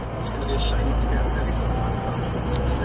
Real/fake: real